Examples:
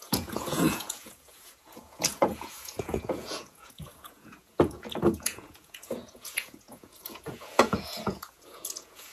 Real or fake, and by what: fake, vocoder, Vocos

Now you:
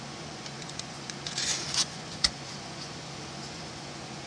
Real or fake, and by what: fake, vocoder, Vocos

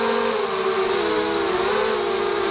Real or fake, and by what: real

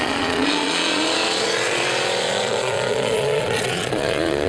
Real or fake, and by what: fake, vocoder, Vocos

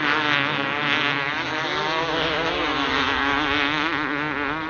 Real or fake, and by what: real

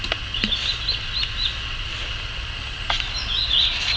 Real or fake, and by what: real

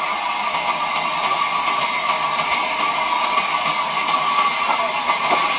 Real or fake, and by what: real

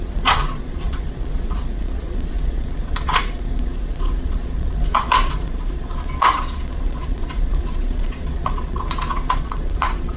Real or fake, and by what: fake, vocoder, Vocos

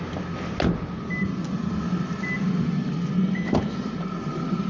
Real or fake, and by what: real